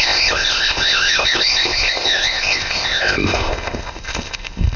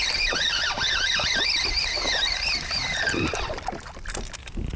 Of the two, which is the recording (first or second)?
second